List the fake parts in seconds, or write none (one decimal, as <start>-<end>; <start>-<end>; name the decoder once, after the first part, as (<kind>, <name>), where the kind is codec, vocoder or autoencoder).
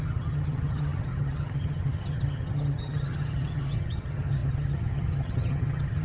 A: 0.0-6.0 (vocoder, HiFi-GAN)